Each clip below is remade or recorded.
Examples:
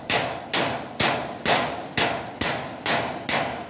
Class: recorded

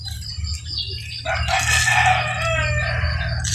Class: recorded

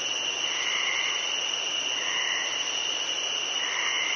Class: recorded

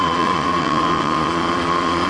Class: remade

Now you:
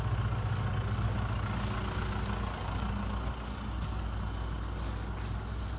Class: recorded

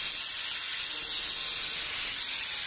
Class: recorded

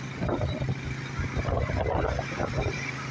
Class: recorded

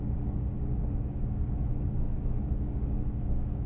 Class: remade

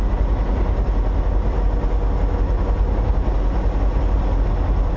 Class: recorded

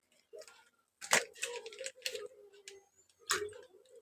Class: recorded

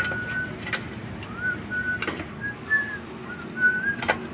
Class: recorded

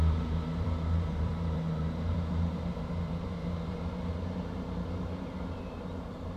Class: remade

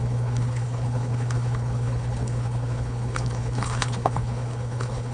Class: remade